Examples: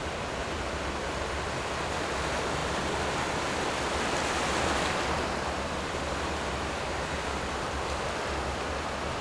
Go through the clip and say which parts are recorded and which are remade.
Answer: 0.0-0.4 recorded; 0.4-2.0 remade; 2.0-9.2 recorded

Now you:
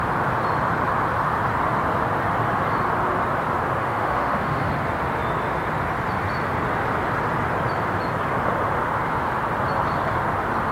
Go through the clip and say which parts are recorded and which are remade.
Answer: 0.0-3.8 recorded; 3.8-4.7 remade; 4.7-10.7 recorded

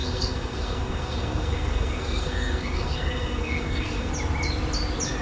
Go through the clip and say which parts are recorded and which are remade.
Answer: 0.0-4.1 remade; 4.1-5.2 recorded

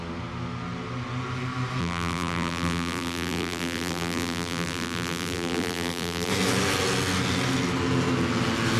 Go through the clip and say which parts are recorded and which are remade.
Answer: 0.0-1.8 recorded; 1.8-6.3 remade; 6.3-8.8 recorded

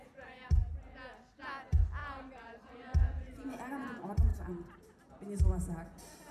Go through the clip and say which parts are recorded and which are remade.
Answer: 0.0-2.0 recorded; 2.0-2.8 remade; 2.8-4.3 recorded; 4.3-5.1 remade; 5.1-6.3 recorded

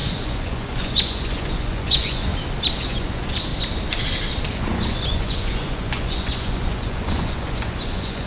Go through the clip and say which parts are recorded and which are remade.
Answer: 0.0-2.3 remade; 2.3-2.8 recorded; 2.8-3.5 remade; 3.5-4.5 recorded; 4.5-8.3 remade

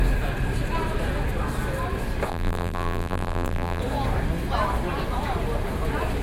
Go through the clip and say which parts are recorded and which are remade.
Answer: 0.0-2.3 recorded; 2.3-3.8 remade; 3.8-6.2 recorded